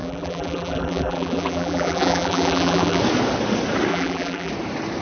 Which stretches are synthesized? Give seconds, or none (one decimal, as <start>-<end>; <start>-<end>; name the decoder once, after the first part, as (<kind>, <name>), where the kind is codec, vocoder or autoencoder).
0.0-3.0 (vocoder, BigVGAN v2); 3.9-4.5